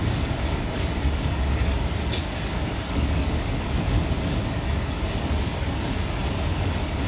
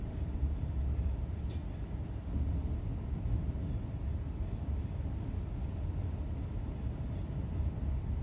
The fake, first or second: first